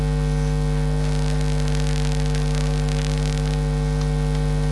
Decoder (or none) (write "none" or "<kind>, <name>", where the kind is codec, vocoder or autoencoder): none